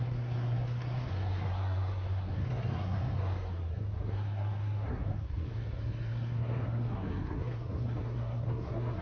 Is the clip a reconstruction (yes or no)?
yes